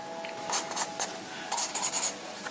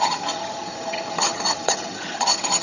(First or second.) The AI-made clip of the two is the second